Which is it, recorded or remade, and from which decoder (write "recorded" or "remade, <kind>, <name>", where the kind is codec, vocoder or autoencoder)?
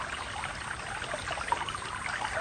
recorded